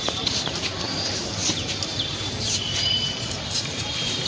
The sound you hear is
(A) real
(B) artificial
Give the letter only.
B